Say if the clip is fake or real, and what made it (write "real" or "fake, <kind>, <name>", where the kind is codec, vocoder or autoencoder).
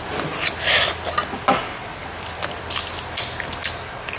real